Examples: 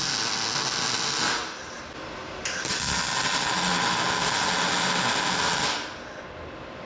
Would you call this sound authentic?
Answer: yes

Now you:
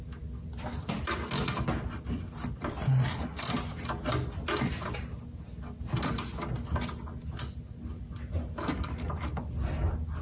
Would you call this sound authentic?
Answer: yes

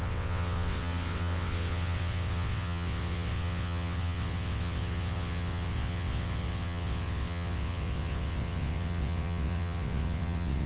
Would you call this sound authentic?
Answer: no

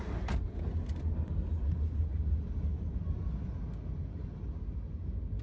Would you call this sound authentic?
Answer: yes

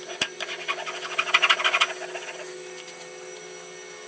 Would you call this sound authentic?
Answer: yes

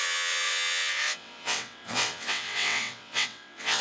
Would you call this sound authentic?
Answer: no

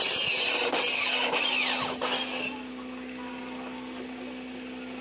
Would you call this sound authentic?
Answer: yes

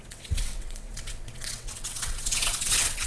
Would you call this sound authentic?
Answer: no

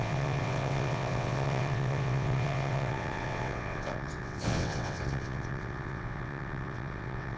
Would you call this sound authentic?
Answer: no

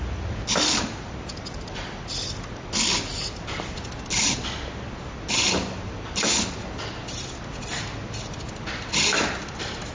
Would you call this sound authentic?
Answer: yes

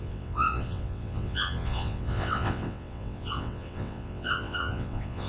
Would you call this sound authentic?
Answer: no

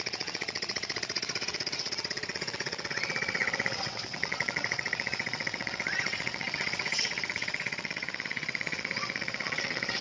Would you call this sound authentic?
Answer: no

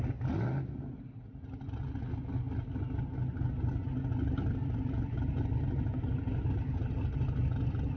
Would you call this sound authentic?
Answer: yes